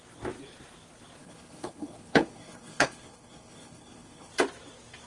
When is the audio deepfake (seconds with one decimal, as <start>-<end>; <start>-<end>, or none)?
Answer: 1.2-4.3